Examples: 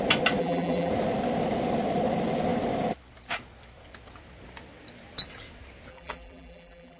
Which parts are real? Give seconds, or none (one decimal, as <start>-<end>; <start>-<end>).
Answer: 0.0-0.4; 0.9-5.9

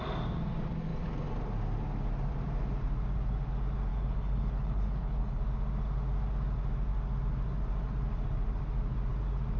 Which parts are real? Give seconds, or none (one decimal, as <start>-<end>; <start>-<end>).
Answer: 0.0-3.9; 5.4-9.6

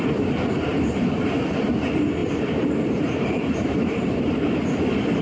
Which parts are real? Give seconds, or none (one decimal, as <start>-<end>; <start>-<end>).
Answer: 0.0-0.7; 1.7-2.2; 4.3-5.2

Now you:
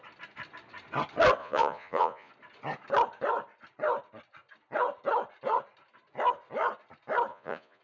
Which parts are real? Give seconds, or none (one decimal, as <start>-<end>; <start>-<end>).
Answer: 0.0-1.4; 2.3-7.3